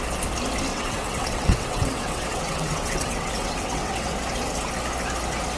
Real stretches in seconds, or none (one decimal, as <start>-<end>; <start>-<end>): 0.0-0.7; 4.1-5.6